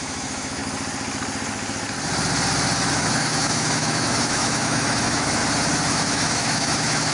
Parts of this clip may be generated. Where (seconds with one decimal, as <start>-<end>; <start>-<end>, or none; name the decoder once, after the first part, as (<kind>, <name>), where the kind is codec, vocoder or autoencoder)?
0.0-0.6 (autoencoder, DAC-VAE); 2.9-5.4; 5.9-7.1